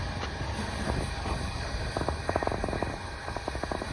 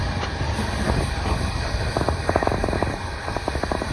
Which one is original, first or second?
first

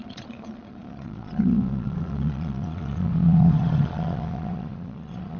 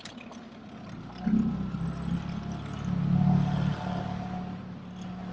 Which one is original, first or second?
second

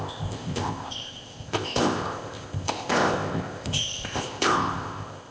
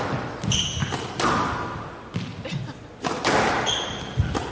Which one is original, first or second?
second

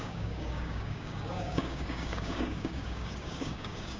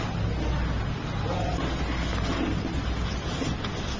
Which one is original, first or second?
second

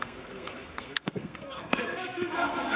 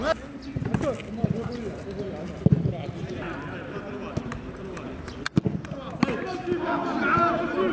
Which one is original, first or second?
second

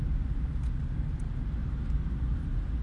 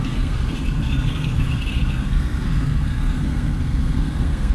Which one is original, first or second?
first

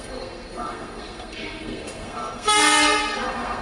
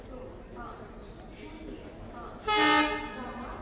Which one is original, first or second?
second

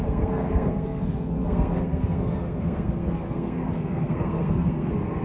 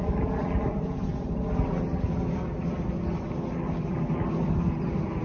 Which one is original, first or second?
second